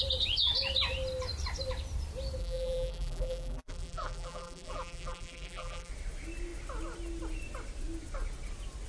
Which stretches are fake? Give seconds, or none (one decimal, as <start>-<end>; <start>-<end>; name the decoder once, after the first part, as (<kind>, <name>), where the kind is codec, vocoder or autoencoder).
2.4-5.9 (vocoder, BigVGAN v2)